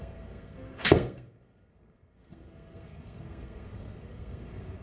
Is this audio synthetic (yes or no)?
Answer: yes